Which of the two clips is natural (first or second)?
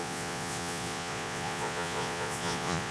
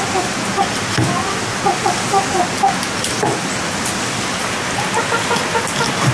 second